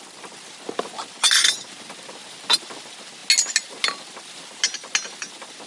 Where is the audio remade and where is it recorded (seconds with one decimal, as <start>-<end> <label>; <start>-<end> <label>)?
0.0-5.7 recorded